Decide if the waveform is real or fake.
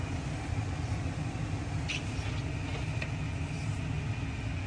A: real